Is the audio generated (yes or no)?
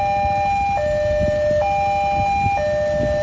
no